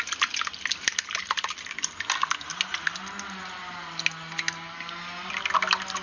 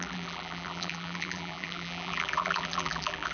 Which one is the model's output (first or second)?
second